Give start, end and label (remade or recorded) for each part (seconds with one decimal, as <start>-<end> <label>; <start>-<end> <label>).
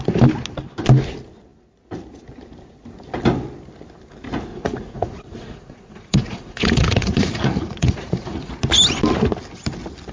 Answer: 0.0-4.5 recorded; 4.5-8.5 remade; 8.5-10.1 recorded